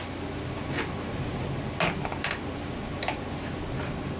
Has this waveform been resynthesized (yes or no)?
no